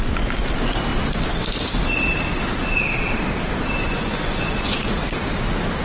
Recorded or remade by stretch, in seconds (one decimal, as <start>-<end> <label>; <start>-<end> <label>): 0.0-3.8 recorded; 3.8-4.9 remade; 4.9-5.8 recorded